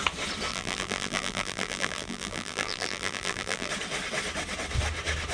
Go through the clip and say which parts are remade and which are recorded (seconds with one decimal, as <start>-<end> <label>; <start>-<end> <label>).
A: 0.0-0.5 recorded; 0.5-3.7 remade; 3.7-5.3 recorded